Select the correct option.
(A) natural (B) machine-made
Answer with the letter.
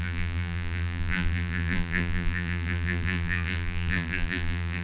B